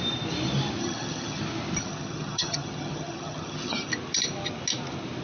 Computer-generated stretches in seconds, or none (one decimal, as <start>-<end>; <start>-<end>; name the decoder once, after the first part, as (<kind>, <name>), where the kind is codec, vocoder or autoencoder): 0.8-1.4 (vocoder, HiFi-GAN); 1.8-3.9